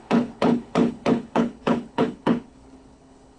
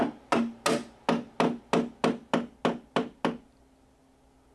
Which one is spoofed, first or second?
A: first